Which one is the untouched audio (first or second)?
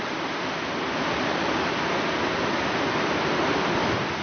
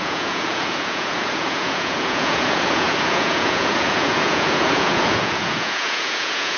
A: first